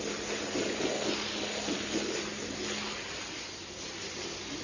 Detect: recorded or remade recorded